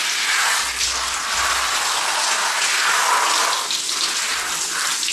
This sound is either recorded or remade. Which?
recorded